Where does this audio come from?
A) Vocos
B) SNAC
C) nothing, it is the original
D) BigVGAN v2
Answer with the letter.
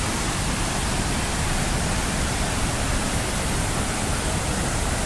C